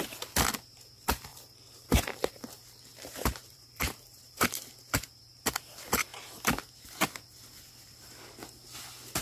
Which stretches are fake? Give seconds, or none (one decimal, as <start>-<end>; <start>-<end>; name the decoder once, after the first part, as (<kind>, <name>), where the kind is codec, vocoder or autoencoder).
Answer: 1.3-2.3 (vocoder, BigVGAN v2); 2.9-5.4

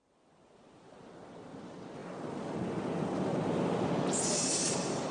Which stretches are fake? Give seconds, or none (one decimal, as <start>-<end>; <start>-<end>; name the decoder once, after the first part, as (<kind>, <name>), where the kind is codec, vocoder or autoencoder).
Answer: none

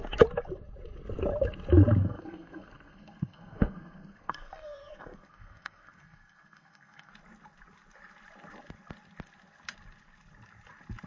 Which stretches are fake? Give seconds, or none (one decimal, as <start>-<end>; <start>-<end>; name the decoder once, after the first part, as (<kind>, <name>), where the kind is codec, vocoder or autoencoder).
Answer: 2.0-7.1 (codec, SNAC)

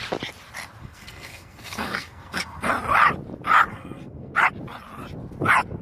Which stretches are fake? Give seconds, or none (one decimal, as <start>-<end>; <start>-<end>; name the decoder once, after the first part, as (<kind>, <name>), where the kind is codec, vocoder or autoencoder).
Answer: 0.8-2.7 (codec, SNAC); 3.7-4.3